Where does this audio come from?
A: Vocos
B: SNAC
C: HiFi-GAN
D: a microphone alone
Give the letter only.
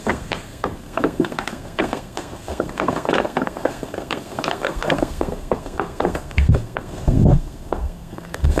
B